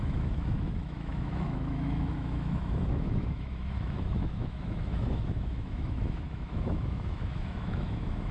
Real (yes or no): no